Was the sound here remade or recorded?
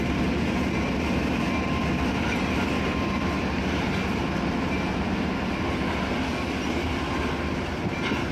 recorded